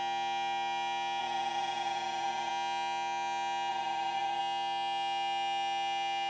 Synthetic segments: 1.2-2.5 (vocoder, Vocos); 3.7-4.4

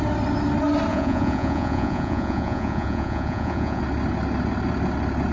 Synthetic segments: 0.9-3.8 (vocoder, Vocos)

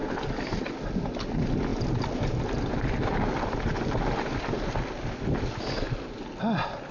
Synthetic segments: none

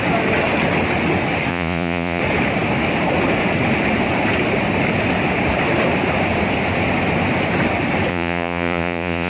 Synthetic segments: 1.5-2.2 (vocoder, Vocos); 8.1-9.3